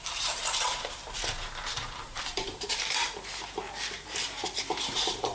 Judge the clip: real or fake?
fake